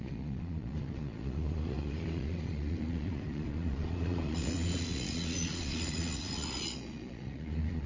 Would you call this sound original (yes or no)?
no